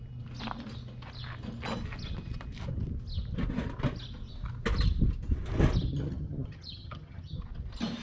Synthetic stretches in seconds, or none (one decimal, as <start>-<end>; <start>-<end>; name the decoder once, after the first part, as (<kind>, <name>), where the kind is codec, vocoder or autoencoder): 5.9-7.4 (vocoder, HiFi-GAN)